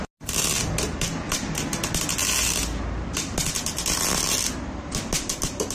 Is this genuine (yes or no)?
yes